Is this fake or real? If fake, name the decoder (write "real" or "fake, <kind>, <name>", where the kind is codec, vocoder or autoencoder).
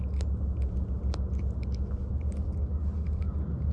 real